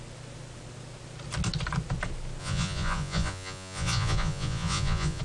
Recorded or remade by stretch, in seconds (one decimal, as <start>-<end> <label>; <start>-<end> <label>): 0.0-2.4 recorded; 2.4-5.2 remade